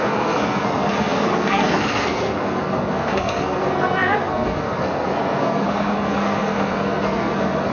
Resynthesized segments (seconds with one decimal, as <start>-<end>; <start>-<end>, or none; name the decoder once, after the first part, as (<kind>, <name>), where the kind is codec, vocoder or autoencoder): 0.0-7.7 (codec, SNAC)